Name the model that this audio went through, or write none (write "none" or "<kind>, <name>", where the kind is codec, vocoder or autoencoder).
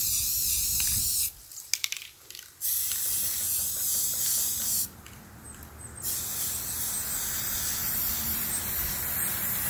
none